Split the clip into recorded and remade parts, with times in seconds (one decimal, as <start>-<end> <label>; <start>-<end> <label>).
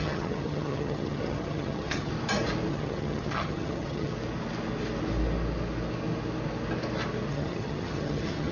0.0-2.1 remade; 2.1-2.7 recorded; 2.7-4.1 remade; 4.1-7.3 recorded; 7.3-8.5 remade